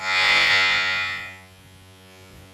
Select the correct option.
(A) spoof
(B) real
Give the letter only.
A